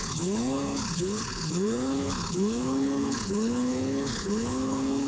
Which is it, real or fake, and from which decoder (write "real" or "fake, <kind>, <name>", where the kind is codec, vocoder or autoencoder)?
fake, codec, HILCodec